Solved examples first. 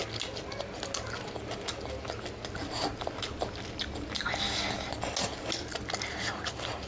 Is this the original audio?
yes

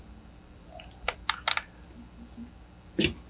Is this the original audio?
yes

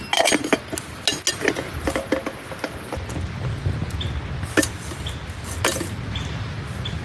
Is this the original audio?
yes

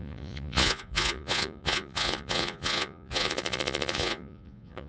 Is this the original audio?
no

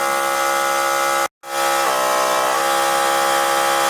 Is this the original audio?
yes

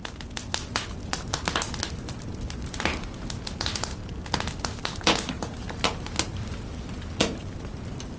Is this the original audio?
yes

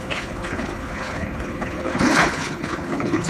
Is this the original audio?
no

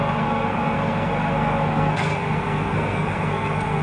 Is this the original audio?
no